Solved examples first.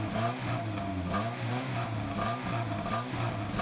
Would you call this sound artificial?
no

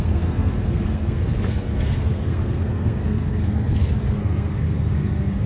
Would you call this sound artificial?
yes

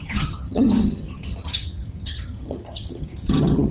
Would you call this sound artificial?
yes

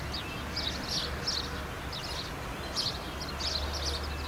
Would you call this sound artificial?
no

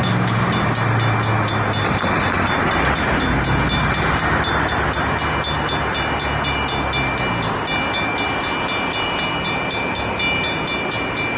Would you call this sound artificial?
no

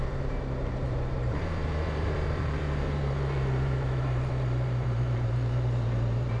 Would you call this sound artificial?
yes